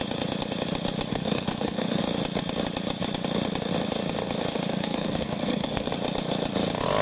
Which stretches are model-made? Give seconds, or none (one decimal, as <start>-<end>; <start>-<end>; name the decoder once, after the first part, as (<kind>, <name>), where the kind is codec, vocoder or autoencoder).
1.1-2.0 (codec, SNAC); 4.8-5.9

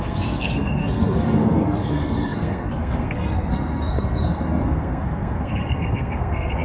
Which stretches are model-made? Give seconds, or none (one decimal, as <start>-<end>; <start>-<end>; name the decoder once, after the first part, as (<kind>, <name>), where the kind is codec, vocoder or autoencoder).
0.0-6.6 (codec, SNAC)

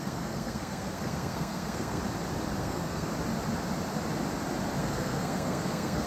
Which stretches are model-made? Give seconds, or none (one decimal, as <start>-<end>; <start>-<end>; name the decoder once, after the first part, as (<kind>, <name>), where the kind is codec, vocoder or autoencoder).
0.0-2.0 (codec, SNAC); 2.6-3.1; 4.8-6.1

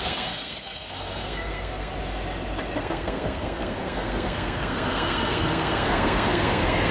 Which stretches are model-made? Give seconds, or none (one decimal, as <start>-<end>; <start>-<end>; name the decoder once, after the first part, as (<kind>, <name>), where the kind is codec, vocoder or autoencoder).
0.0-1.9 (codec, SNAC); 2.8-6.9

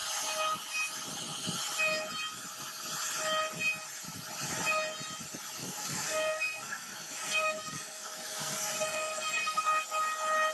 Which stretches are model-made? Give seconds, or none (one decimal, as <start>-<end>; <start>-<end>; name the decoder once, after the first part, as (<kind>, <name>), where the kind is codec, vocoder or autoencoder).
5.6-9.6 (codec, SNAC)

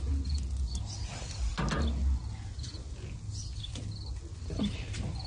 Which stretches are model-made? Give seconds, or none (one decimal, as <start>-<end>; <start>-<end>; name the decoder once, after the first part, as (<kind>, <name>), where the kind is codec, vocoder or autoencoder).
none

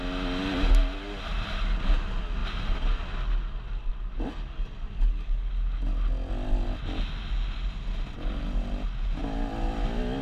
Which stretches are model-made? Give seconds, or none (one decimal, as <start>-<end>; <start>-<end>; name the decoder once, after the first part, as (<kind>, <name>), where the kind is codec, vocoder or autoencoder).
none